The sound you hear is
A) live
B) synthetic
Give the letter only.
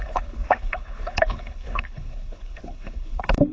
B